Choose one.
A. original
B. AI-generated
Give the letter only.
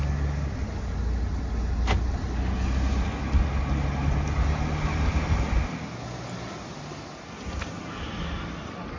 A